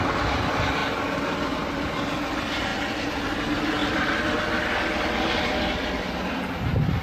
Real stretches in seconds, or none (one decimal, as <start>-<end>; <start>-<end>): 0.0-2.7; 3.4-7.0